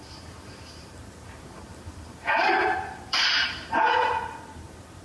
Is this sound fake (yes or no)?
yes